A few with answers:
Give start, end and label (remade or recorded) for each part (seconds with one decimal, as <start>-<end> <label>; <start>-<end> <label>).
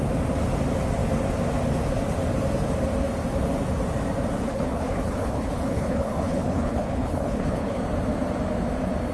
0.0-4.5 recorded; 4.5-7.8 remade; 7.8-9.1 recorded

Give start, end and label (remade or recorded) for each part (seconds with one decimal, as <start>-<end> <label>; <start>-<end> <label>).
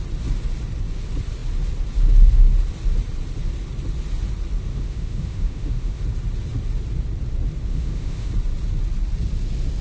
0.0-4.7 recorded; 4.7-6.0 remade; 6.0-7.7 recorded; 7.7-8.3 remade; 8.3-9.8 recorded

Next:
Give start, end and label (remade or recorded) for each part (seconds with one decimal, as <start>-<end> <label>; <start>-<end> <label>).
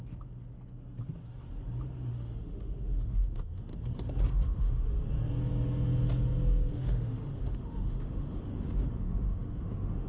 0.0-2.1 recorded; 2.1-3.7 remade; 3.7-4.3 recorded; 4.3-4.9 remade; 4.9-6.7 recorded; 6.7-10.1 remade